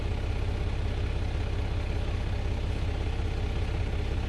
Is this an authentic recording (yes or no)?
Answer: yes